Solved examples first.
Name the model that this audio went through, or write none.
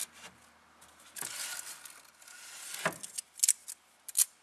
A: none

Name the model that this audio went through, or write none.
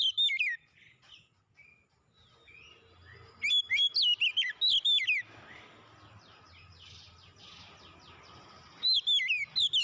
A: none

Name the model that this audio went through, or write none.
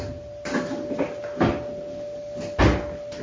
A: none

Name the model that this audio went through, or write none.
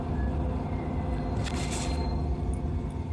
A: none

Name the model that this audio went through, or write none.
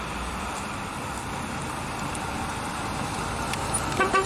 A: vocoder, BigVGAN v2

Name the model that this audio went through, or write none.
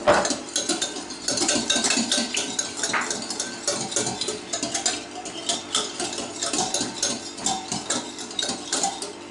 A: none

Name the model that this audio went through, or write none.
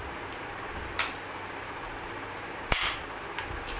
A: none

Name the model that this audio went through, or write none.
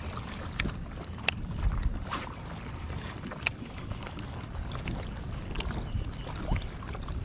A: vocoder, BigVGAN v2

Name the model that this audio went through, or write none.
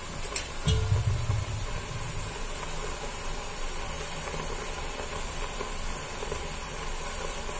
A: none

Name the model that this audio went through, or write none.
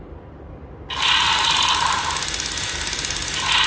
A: none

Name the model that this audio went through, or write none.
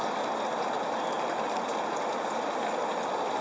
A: none